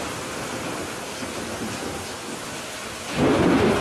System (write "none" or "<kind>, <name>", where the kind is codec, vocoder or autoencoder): none